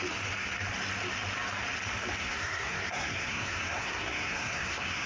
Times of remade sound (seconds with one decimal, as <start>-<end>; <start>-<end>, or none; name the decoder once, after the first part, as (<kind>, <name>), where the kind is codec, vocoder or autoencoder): 2.2-5.1 (codec, SNAC)